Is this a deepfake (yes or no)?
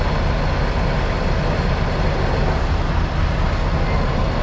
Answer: no